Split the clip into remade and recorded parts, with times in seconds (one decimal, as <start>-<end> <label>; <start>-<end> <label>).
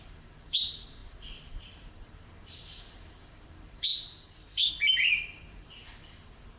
0.0-6.6 remade